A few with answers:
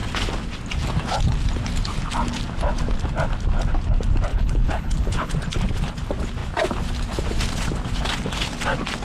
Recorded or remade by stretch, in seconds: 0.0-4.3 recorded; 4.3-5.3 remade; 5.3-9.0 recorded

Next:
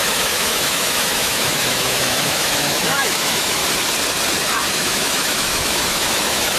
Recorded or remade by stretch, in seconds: 0.0-3.6 remade; 3.6-4.7 recorded; 4.7-6.6 remade

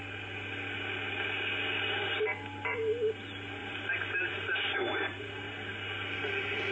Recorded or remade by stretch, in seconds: 0.0-3.6 recorded; 3.6-5.5 remade; 5.5-6.7 recorded

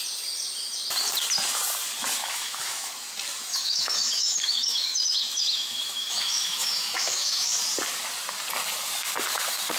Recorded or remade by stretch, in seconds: 0.0-2.2 recorded; 2.2-2.9 remade; 2.9-3.5 recorded; 3.5-7.6 remade; 7.6-9.8 recorded

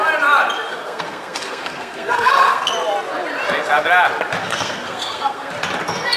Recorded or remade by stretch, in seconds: 0.0-0.7 recorded; 0.7-2.7 remade; 2.7-4.4 recorded; 4.4-5.5 remade; 5.5-6.2 recorded

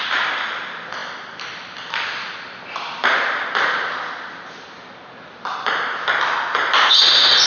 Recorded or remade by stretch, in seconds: 0.0-7.5 recorded

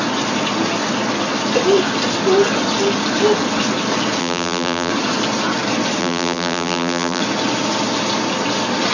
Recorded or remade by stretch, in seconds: 0.0-4.2 recorded; 4.2-4.9 remade; 4.9-6.0 recorded; 6.0-7.2 remade; 7.2-8.9 recorded

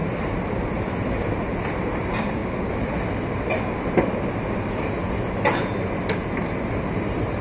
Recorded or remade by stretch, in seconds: 0.0-2.4 remade; 2.4-6.7 recorded; 6.7-7.4 remade